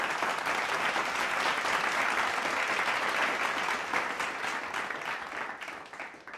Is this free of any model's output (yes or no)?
yes